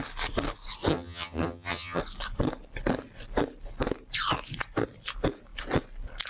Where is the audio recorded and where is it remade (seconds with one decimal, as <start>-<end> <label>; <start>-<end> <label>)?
0.0-0.9 recorded; 0.9-2.0 remade; 2.0-6.3 recorded